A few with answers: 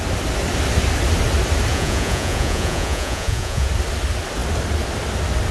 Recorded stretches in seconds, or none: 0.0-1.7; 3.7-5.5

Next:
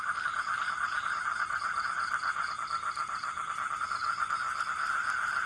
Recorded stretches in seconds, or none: 0.0-5.5

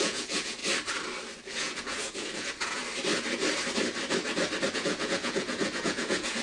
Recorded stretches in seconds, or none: 0.6-1.4; 2.8-4.7